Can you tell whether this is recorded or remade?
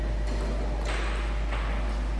recorded